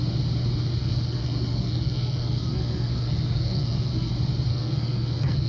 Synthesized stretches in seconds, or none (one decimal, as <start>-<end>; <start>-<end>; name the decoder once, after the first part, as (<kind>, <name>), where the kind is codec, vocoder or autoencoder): 0.8-4.1 (codec, SNAC); 4.5-5.5